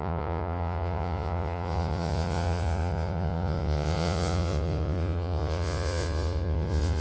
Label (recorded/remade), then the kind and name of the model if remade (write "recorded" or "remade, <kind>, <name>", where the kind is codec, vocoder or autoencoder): remade, vocoder, Vocos